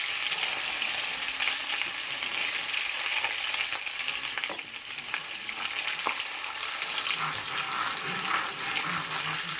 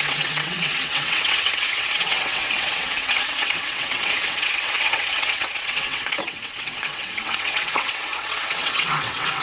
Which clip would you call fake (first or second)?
second